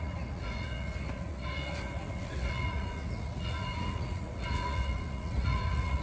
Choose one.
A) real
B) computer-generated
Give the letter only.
B